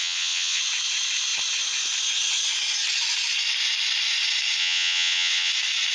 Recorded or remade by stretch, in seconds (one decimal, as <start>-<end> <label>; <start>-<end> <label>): 0.0-0.6 remade; 0.6-4.6 recorded; 4.6-5.5 remade; 5.5-5.9 recorded